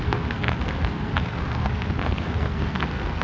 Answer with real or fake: fake